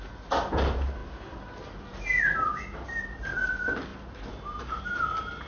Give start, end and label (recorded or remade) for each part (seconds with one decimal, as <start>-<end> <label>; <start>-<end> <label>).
0.0-5.5 recorded